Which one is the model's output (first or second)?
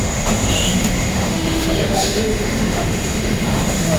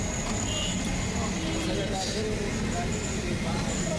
first